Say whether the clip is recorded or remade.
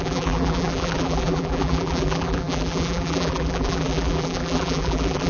remade